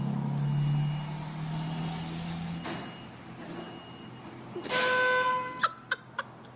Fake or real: real